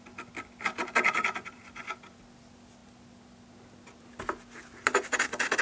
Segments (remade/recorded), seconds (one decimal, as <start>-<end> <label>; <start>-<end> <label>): 0.0-5.6 recorded